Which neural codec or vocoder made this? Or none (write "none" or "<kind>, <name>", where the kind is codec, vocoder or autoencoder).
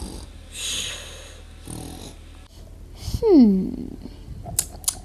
none